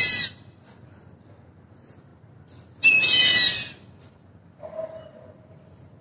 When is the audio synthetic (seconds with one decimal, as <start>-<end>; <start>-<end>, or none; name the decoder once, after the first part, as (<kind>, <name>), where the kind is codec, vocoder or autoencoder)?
none